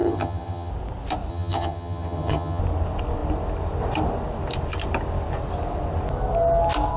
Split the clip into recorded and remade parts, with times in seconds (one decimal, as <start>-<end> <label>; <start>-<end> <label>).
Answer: 0.0-0.7 remade; 0.7-1.3 recorded; 1.3-2.6 remade; 2.6-7.0 recorded